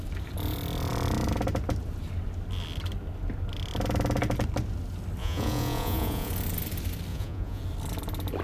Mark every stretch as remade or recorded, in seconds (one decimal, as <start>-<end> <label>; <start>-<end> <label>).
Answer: 0.0-5.2 recorded; 5.2-6.3 remade; 6.3-7.1 recorded; 7.1-7.6 remade; 7.6-8.4 recorded